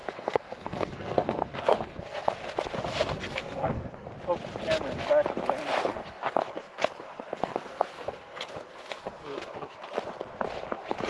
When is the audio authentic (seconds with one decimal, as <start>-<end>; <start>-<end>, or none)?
2.3-2.9; 4.1-5.9; 9.8-11.1